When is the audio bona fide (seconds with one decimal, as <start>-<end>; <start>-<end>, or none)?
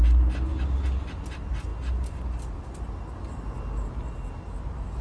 0.0-5.0